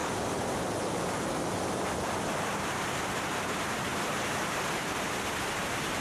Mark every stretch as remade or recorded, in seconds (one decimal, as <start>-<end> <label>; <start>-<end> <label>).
0.0-2.5 recorded; 2.5-3.9 remade; 3.9-4.8 recorded; 4.8-6.0 remade